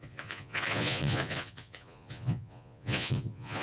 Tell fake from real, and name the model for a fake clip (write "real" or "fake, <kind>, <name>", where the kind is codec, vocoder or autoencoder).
fake, vocoder, Vocos